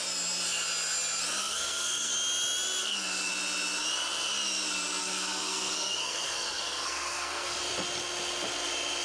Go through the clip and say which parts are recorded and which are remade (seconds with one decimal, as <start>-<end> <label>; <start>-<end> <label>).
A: 0.0-1.4 recorded; 1.4-2.1 remade; 2.1-2.8 recorded; 2.8-3.3 remade; 3.3-5.0 recorded; 5.0-7.6 remade; 7.6-9.0 recorded